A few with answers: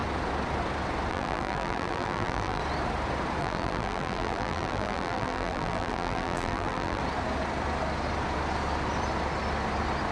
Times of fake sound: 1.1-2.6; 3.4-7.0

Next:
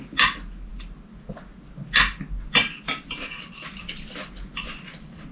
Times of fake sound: none

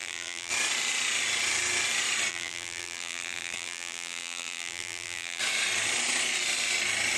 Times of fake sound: 0.0-0.5; 2.3-5.4